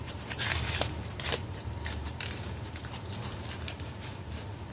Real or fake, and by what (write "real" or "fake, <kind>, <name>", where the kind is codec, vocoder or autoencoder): fake, vocoder, BigVGAN v2